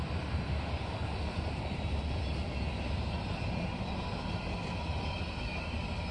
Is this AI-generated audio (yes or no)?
no